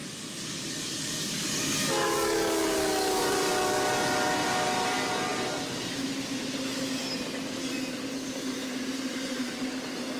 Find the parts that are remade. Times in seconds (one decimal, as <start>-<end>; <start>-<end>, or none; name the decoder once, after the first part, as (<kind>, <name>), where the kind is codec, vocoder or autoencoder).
0.0-3.4 (codec, DAC)